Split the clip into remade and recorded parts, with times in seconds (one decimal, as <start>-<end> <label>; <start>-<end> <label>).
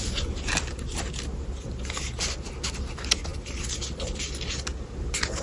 0.0-5.4 recorded